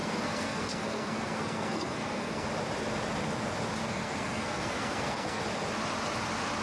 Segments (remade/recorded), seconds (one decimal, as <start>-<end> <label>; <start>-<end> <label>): 0.0-2.5 remade; 2.5-3.8 recorded; 3.8-5.4 remade; 5.4-6.6 recorded